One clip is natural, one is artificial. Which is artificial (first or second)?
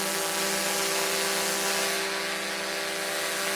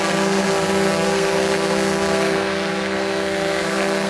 second